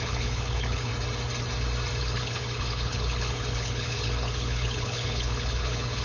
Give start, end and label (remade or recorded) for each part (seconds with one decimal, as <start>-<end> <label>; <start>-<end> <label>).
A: 0.0-0.9 remade; 0.9-2.0 recorded; 2.0-6.0 remade